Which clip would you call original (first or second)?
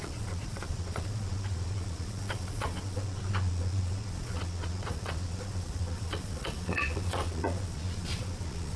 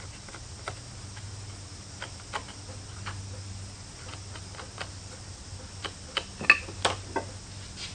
second